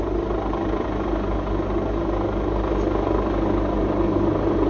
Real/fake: real